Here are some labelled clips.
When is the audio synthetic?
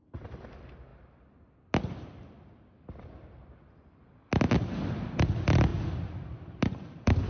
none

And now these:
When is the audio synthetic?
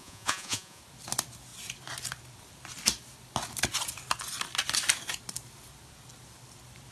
0.0-0.8 (vocoder, Vocos)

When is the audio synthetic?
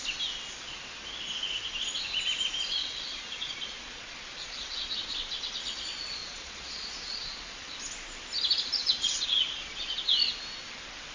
2.8-5.0 (vocoder, Vocos); 6.2-7.7; 8.8-10.4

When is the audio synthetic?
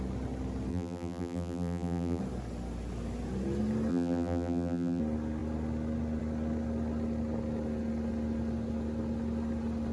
0.7-2.2 (vocoder, BigVGAN v2); 3.9-5.0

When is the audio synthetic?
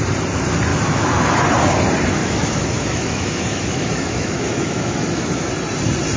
0.7-1.3 (autoencoder, DAC-VAE); 2.2-5.5